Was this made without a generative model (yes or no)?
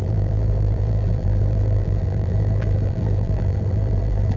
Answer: no